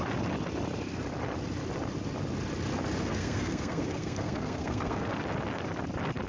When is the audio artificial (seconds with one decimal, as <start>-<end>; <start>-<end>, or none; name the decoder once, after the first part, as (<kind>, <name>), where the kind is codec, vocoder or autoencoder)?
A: 3.0-5.1 (codec, SNAC)